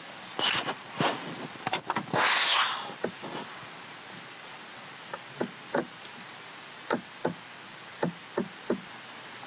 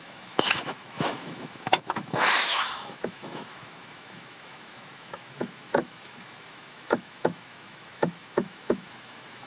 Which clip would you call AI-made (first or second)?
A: second